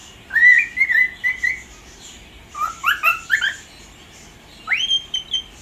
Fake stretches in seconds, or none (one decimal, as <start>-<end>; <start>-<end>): none